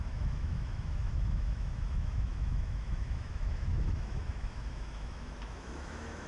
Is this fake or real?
fake